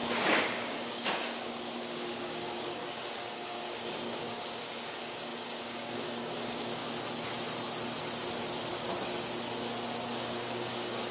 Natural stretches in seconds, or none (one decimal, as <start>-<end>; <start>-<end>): 6.8-10.1